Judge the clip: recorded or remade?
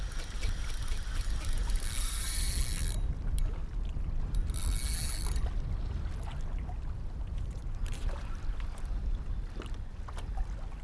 recorded